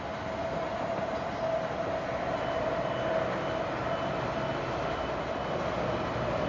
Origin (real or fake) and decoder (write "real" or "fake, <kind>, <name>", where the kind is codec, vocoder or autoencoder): real